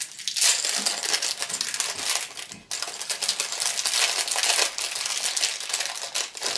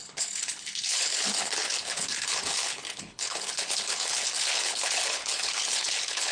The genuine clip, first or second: first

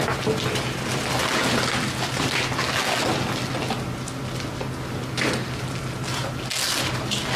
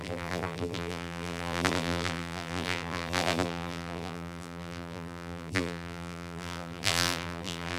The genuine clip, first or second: first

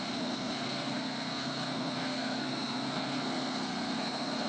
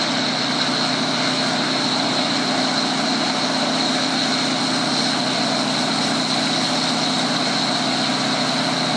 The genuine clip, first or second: second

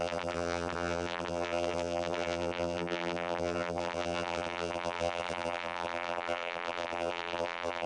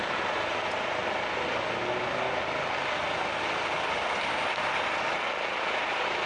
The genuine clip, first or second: second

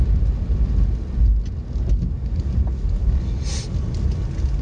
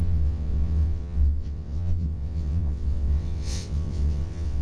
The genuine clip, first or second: first